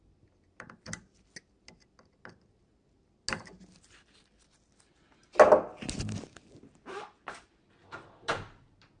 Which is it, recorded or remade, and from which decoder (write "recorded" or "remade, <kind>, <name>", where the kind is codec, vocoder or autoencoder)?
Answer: recorded